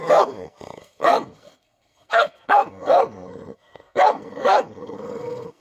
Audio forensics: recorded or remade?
remade